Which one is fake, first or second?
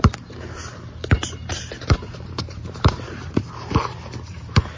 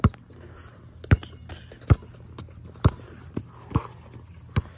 first